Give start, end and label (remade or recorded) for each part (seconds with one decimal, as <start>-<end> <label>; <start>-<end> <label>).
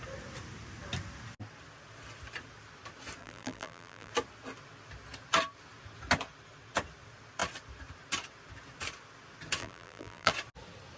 0.0-3.2 recorded; 3.2-4.1 remade; 4.1-9.6 recorded; 9.6-10.3 remade; 10.3-11.0 recorded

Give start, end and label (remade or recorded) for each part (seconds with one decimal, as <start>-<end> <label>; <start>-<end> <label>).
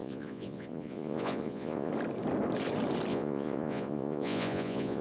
0.0-1.9 remade; 1.9-3.1 recorded; 3.1-5.0 remade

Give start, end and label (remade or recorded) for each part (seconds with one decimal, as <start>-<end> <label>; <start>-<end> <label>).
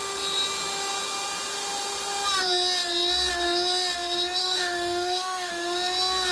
0.0-4.4 recorded; 4.4-5.5 remade; 5.5-6.3 recorded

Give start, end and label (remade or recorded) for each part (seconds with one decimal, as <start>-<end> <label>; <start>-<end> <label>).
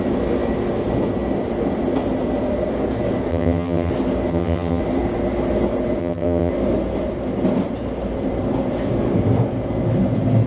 0.0-3.3 recorded; 3.3-3.9 remade; 3.9-4.3 recorded; 4.3-4.8 remade; 4.8-6.0 recorded; 6.0-6.5 remade; 6.5-10.5 recorded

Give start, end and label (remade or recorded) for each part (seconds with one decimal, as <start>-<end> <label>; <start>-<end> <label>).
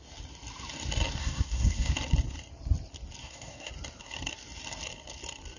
0.0-1.2 recorded; 1.2-1.9 remade; 1.9-3.2 recorded; 3.2-3.7 remade; 3.7-5.6 recorded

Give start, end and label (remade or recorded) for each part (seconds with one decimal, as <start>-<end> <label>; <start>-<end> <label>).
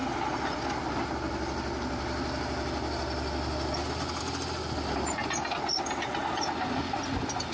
0.0-7.5 recorded